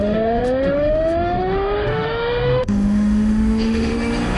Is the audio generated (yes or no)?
yes